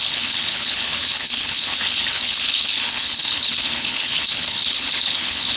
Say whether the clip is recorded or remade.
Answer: remade